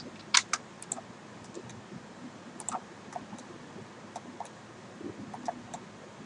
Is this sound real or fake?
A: real